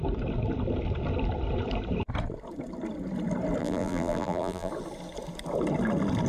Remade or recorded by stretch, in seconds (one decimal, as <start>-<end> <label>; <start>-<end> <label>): 0.0-3.6 recorded; 3.6-4.7 remade; 4.7-6.3 recorded

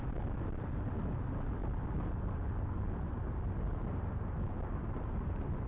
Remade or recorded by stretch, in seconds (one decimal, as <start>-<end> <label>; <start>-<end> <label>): 0.0-5.7 recorded

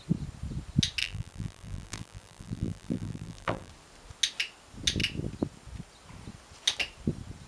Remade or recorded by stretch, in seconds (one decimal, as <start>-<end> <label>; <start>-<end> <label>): 0.0-1.0 recorded; 1.0-3.7 remade; 3.7-7.5 recorded

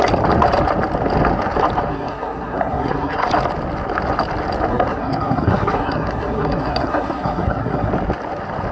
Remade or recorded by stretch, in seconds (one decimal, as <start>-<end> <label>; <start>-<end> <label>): 0.0-1.9 recorded; 1.9-3.3 remade; 3.3-4.7 recorded; 4.7-7.9 remade; 7.9-8.7 recorded

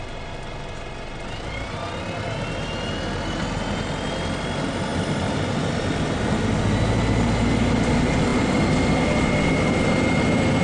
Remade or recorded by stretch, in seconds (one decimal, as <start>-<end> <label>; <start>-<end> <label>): 0.0-4.9 recorded; 4.9-6.4 remade; 6.4-10.6 recorded